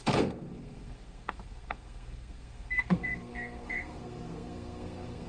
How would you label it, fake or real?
fake